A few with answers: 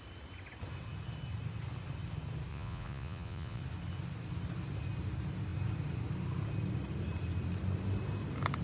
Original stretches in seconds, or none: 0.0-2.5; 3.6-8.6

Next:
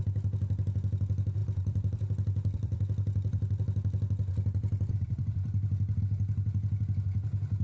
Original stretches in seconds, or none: 0.0-1.4; 6.0-7.6

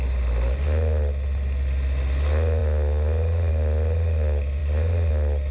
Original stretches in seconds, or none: 0.0-5.5

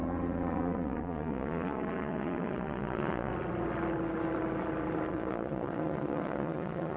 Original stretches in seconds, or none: 3.3-5.1

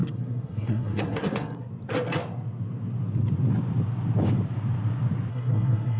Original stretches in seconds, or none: 1.7-5.3

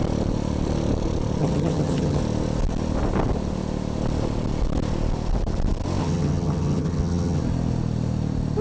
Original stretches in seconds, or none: 0.0-1.4; 2.2-6.0; 7.4-8.6

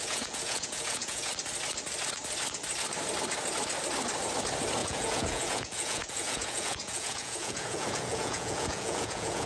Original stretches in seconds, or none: 1.3-4.8